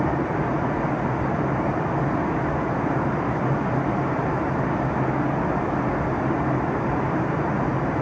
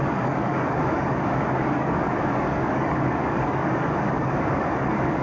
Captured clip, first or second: first